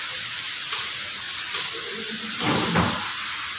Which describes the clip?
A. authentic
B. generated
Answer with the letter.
A